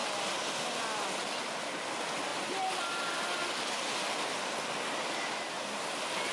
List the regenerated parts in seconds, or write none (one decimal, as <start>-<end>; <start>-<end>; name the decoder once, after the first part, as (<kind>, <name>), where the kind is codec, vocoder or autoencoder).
none